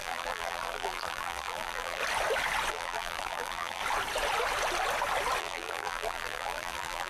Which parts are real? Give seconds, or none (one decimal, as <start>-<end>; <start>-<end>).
2.0-2.7; 3.8-5.4